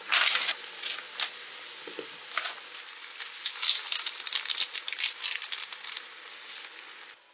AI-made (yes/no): no